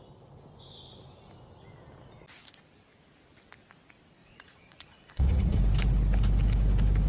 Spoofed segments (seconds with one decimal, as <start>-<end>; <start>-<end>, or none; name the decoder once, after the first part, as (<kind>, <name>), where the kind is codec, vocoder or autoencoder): 4.2-5.6 (vocoder, Vocos)